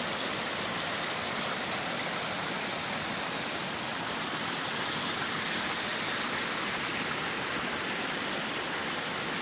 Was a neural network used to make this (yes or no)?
no